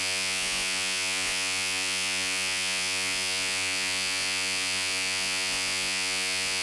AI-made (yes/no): yes